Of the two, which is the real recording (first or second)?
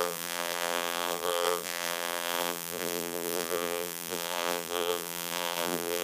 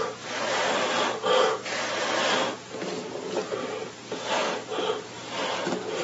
second